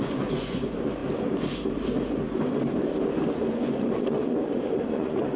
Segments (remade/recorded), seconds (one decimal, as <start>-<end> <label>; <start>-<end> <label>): 0.0-1.0 remade; 1.0-3.5 recorded; 3.5-5.4 remade